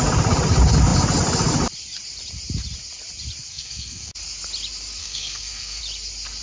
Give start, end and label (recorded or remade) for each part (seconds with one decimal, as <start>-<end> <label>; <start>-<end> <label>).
0.0-3.5 recorded; 3.5-4.1 remade; 4.1-5.0 recorded; 5.0-5.8 remade; 5.8-6.4 recorded